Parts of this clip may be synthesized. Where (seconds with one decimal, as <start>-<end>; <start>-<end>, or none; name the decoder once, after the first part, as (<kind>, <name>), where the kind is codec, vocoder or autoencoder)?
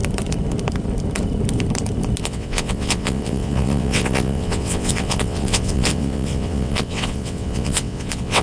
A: 2.2-8.4 (vocoder, WaveNeXt)